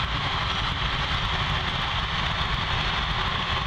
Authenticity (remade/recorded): recorded